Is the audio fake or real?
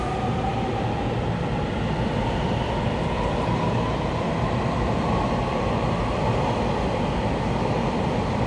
real